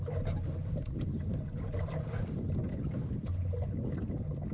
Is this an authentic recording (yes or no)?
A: yes